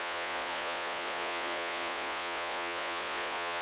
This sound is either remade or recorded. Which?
remade